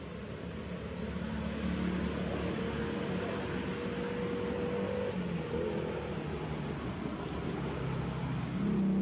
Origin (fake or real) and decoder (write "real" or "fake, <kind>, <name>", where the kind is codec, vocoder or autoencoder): real